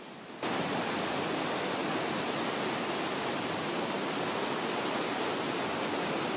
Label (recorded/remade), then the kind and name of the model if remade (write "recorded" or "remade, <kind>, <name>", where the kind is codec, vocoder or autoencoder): recorded